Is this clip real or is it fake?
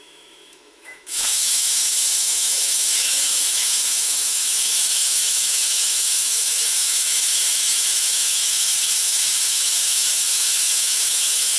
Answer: fake